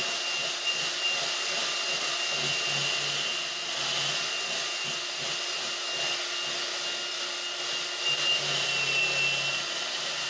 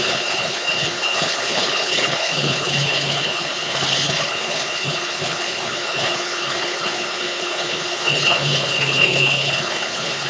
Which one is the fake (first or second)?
second